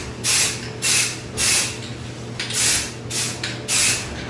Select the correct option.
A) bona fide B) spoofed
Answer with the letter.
A